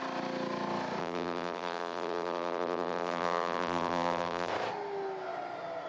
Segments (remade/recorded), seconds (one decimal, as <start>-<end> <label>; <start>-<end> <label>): 0.0-1.0 recorded; 1.0-4.5 remade; 4.5-5.9 recorded